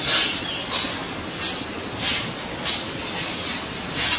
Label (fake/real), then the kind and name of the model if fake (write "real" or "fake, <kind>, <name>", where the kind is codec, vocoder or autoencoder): real